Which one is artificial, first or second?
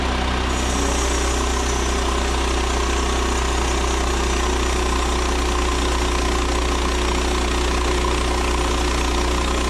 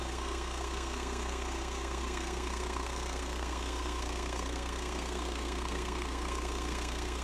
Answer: second